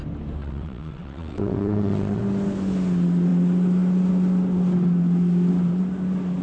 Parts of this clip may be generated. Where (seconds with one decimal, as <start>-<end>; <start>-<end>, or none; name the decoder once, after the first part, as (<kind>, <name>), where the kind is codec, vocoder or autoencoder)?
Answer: 0.4-2.2 (vocoder, WaveNeXt)